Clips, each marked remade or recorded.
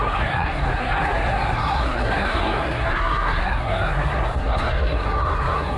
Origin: remade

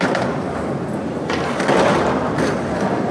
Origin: recorded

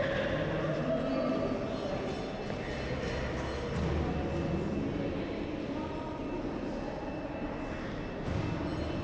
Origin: recorded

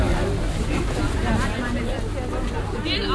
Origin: recorded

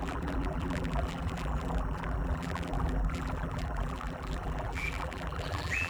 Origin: remade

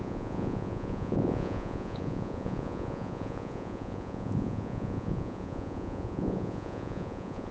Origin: remade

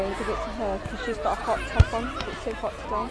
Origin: recorded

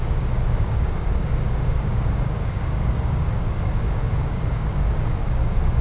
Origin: remade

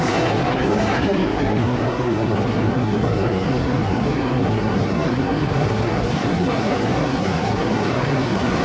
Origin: remade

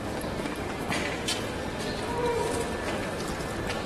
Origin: recorded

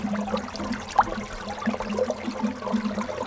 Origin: recorded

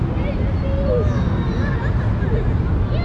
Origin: recorded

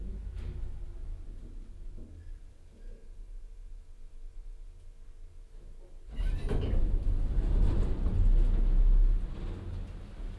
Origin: recorded